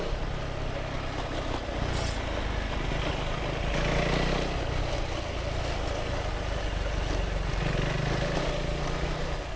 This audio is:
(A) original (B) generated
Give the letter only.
A